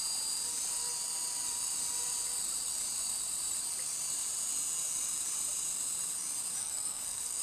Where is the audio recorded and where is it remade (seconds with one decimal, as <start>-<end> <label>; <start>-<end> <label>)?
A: 0.0-6.6 recorded; 6.6-7.4 remade